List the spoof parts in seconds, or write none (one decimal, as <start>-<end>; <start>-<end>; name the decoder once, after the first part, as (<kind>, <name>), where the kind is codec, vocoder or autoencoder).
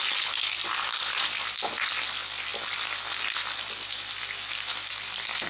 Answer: none